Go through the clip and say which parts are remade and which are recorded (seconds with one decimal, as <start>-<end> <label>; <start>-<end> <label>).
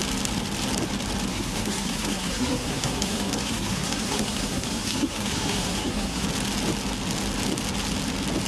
0.0-1.3 recorded; 1.3-6.2 remade; 6.2-8.5 recorded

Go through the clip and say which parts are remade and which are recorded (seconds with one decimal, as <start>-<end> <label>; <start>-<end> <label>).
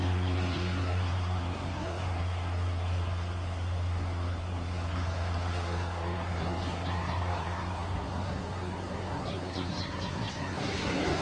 0.0-11.2 remade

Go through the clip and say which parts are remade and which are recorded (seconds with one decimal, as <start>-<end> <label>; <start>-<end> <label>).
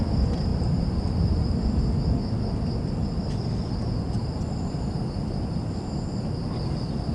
0.0-7.1 recorded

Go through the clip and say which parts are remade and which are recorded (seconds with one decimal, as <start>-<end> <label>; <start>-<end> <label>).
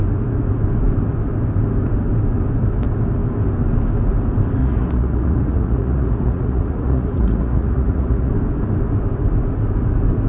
0.0-4.6 recorded; 4.6-8.3 remade; 8.3-10.3 recorded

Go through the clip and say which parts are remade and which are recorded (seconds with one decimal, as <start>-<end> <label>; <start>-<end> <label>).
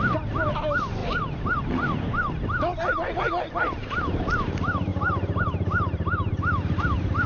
0.0-7.3 recorded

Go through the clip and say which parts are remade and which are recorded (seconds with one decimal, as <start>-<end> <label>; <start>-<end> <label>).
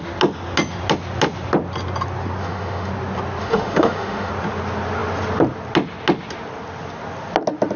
0.0-2.4 recorded; 2.4-2.9 remade; 2.9-3.4 recorded; 3.4-4.3 remade; 4.3-7.8 recorded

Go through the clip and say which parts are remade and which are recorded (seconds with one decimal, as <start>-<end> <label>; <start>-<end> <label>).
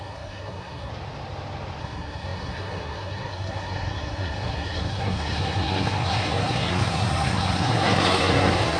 0.0-0.9 remade; 0.9-1.8 recorded; 1.8-8.8 remade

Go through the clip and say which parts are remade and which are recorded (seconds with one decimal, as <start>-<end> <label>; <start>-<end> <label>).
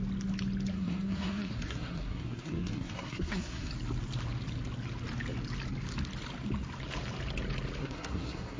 0.0-0.7 recorded; 0.7-3.7 remade; 3.7-7.8 recorded; 7.8-8.6 remade